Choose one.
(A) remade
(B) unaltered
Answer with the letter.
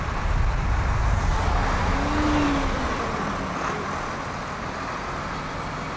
B